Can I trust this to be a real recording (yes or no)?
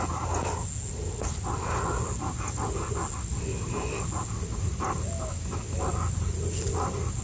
yes